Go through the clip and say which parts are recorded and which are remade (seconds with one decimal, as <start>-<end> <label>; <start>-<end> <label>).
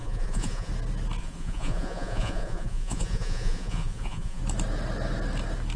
0.0-0.7 remade; 0.7-1.2 recorded; 1.2-4.4 remade; 4.4-5.8 recorded